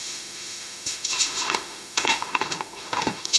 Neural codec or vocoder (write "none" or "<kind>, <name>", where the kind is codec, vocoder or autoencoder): autoencoder, DAC-VAE